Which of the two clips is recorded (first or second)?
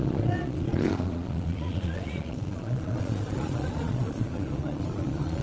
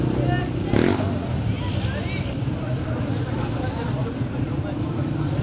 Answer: second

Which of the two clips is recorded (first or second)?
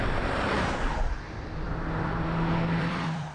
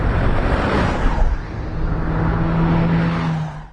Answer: second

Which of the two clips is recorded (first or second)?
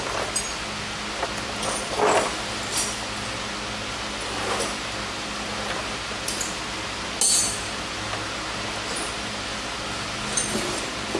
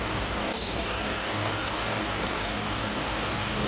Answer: first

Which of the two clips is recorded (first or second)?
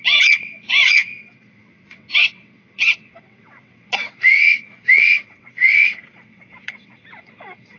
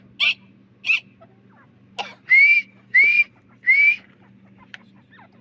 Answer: second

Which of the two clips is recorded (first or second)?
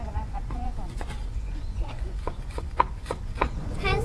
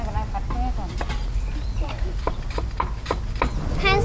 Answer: second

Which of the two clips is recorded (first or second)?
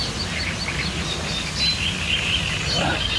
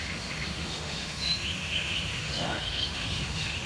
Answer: first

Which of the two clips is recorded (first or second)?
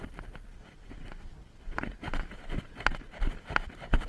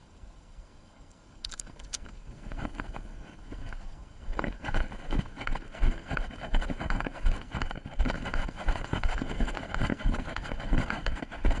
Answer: first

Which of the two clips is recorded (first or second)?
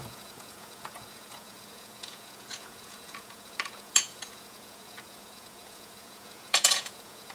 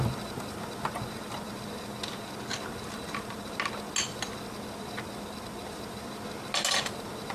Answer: second